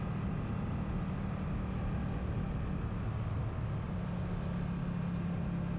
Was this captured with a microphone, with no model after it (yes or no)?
yes